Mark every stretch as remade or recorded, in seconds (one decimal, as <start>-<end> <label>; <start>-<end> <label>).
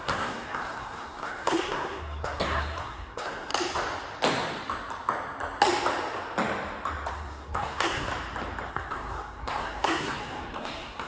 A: 0.0-3.5 remade; 3.5-7.1 recorded; 7.1-8.1 remade; 8.1-8.7 recorded; 8.7-11.1 remade